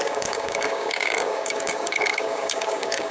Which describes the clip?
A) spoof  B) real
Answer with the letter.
A